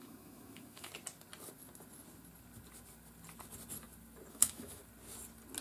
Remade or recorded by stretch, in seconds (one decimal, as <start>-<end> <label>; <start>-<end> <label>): 0.0-0.9 remade; 0.9-4.3 recorded; 4.3-4.8 remade; 4.8-5.6 recorded